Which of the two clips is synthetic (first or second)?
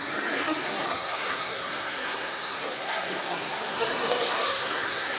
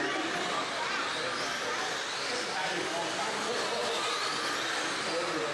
first